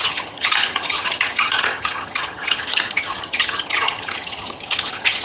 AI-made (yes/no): yes